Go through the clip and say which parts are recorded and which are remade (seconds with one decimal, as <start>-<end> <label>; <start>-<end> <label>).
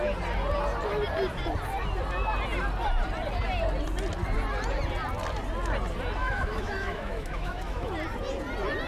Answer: 0.0-6.2 recorded; 6.2-7.9 remade; 7.9-8.9 recorded